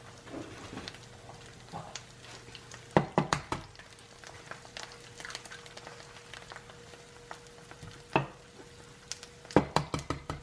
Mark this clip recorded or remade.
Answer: recorded